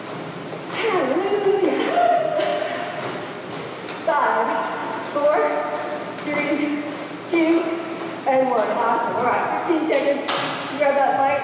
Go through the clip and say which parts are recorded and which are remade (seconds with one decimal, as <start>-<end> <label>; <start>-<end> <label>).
0.0-2.5 recorded; 2.5-3.5 remade; 3.5-11.4 recorded